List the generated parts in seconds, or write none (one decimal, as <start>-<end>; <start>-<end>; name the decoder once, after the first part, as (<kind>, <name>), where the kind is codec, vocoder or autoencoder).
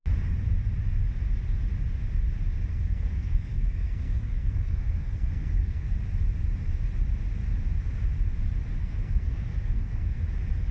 2.7-5.9 (codec, SNAC); 8.8-10.2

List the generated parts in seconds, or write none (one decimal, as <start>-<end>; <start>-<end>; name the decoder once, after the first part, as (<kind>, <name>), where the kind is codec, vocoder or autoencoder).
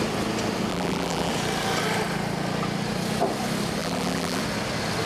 0.7-1.3 (vocoder, BigVGAN v2); 3.8-4.4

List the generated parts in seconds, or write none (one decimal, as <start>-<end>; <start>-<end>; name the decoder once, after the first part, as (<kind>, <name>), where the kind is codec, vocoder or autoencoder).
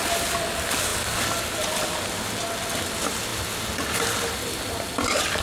none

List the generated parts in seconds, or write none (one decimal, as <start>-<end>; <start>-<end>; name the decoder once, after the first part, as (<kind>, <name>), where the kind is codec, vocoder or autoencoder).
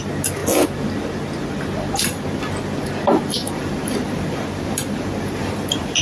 3.4-6.0 (vocoder, BigVGAN v2)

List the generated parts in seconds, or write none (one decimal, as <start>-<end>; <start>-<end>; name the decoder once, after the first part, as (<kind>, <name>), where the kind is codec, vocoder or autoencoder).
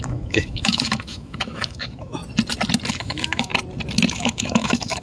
0.0-2.2 (autoencoder, DAC-VAE); 2.9-3.5; 4.1-5.0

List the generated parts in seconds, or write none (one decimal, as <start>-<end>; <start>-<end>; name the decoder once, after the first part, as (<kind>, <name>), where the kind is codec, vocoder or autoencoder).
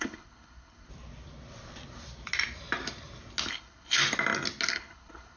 0.0-0.9 (codec, HILCodec); 3.5-4.0; 4.7-5.4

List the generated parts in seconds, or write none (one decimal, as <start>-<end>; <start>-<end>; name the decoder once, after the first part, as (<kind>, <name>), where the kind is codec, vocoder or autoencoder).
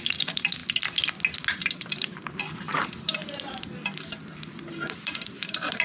0.0-0.6 (vocoder, BigVGAN v2); 1.6-2.7; 3.5-5.8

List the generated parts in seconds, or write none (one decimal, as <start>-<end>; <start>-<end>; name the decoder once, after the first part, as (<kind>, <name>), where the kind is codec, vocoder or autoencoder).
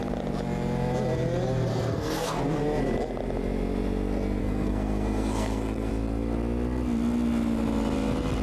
1.7-2.4 (codec, SNAC); 4.4-5.9